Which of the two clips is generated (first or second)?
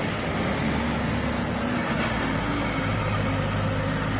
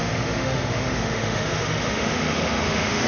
second